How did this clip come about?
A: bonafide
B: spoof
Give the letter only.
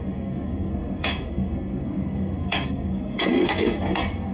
B